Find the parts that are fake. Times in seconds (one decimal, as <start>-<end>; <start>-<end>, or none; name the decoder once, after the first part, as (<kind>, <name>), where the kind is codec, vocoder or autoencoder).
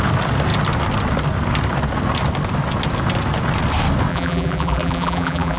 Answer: 4.1-5.6 (vocoder, BigVGAN v2)